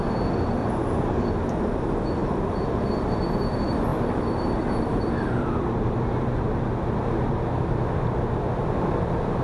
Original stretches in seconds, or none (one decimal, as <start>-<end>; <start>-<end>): 0.0-0.6; 1.3-2.2; 3.3-3.9; 7.3-9.4